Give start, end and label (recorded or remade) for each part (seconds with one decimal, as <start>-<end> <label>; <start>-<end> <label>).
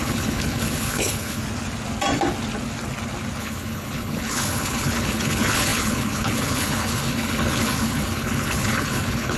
0.0-1.4 remade; 1.4-3.4 recorded; 3.4-9.4 remade